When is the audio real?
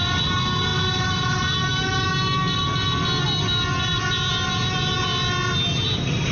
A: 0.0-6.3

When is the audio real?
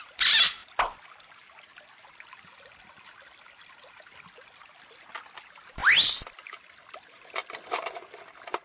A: 0.0-8.6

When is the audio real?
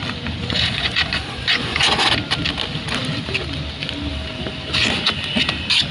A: 0.0-0.4; 2.1-5.9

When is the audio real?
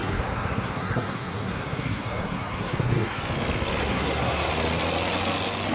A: 3.2-3.8; 4.5-5.7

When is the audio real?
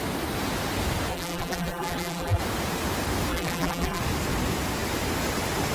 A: 0.0-1.1; 2.4-3.3; 4.0-5.7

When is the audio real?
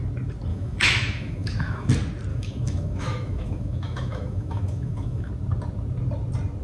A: 0.0-0.5; 1.9-2.3; 5.3-6.6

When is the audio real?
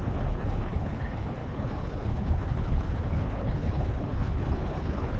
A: none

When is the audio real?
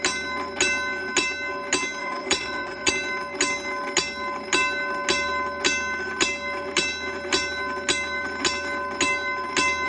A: 0.0-2.0; 2.9-9.9